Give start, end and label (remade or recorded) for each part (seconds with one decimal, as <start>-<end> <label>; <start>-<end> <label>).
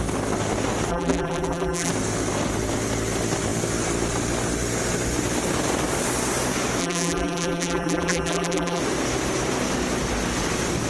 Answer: 0.0-0.9 recorded; 0.9-1.9 remade; 1.9-6.8 recorded; 6.8-8.8 remade; 8.8-10.9 recorded